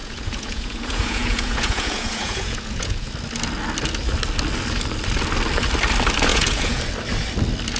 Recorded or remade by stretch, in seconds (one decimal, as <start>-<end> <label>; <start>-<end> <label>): 0.0-3.1 remade; 3.1-6.3 recorded; 6.3-6.8 remade; 6.8-7.8 recorded